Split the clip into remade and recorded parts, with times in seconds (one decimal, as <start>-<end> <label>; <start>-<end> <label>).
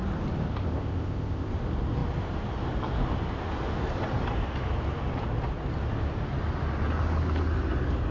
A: 0.0-0.5 recorded; 0.5-1.5 remade; 1.5-8.1 recorded